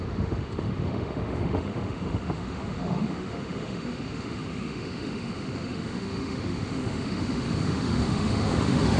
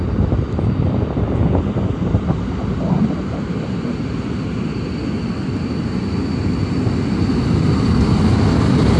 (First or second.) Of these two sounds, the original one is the second